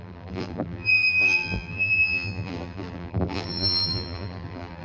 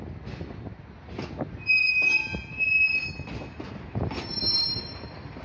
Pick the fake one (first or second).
first